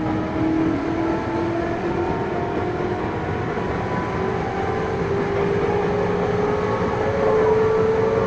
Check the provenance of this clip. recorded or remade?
recorded